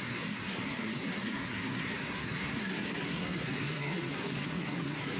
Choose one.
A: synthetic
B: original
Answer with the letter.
A